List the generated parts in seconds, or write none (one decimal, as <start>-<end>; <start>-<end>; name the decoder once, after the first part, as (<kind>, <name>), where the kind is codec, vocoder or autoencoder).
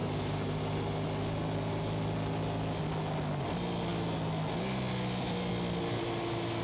none